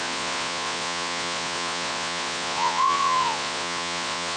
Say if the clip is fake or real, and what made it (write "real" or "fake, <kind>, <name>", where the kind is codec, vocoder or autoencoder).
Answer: fake, vocoder, Vocos